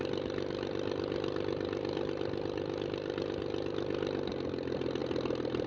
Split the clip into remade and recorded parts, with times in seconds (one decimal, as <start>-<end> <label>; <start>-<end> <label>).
0.0-5.7 recorded